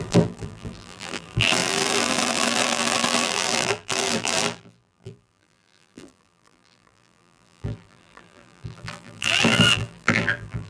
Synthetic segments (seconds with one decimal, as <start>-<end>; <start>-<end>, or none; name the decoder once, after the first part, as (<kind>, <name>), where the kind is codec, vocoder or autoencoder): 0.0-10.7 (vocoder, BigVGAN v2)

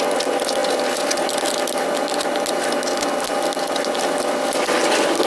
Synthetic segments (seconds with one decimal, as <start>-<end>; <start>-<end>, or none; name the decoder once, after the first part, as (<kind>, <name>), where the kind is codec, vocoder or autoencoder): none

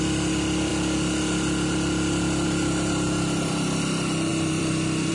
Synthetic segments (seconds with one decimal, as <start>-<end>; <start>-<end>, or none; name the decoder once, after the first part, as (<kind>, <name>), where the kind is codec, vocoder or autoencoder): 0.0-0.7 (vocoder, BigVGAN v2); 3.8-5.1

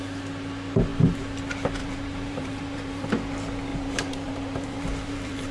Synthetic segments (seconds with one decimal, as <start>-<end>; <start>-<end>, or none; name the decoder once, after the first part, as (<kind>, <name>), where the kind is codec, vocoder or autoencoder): 1.8-3.1 (vocoder, BigVGAN v2); 3.7-5.5

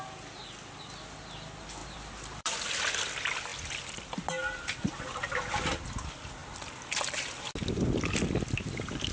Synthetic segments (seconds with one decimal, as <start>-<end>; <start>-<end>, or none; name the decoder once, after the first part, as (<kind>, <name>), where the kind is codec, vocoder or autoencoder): 1.8-2.9 (vocoder, BigVGAN v2)

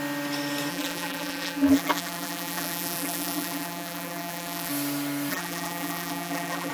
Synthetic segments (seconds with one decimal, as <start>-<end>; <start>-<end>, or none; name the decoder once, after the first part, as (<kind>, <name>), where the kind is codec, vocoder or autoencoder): 0.7-4.7 (vocoder, BigVGAN v2); 5.3-6.7

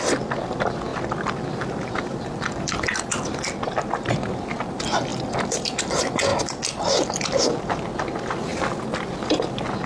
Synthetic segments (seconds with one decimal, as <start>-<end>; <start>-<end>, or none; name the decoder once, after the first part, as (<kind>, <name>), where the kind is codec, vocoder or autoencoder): 0.9-3.1 (vocoder, BigVGAN v2)

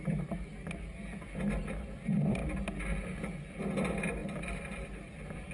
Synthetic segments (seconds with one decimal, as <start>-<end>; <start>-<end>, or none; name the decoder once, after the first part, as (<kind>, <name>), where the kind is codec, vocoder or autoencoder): 0.0-0.5 (vocoder, BigVGAN v2); 1.6-2.4; 3.5-5.5